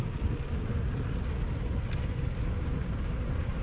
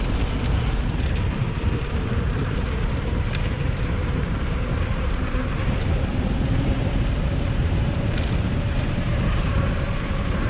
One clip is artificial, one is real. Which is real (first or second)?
first